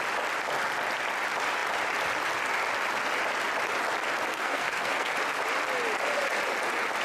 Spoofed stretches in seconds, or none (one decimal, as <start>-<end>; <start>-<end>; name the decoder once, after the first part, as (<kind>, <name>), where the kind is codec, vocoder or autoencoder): 4.3-5.1 (codec, SNAC)